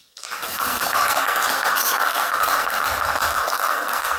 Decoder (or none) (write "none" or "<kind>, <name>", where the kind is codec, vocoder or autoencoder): codec, SNAC